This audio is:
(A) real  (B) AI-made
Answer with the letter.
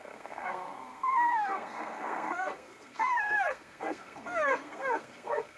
B